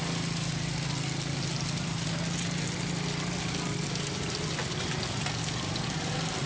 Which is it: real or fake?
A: real